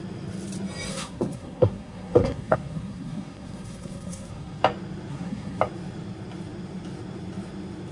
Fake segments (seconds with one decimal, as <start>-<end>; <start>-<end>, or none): 0.9-4.6; 5.1-5.6